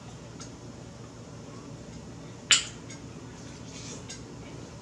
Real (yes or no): yes